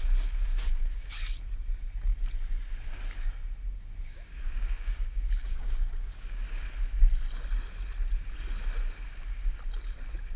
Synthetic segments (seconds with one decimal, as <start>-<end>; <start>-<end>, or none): 0.5-1.1; 4.1-6.4